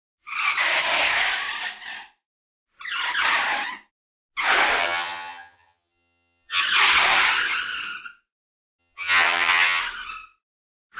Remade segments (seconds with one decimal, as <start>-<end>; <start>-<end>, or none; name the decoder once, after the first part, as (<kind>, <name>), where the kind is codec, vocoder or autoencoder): 4.8-6.6 (vocoder, HiFi-GAN); 8.8-9.8